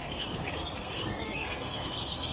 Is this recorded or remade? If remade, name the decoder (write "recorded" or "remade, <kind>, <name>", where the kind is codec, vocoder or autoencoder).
remade, codec, SNAC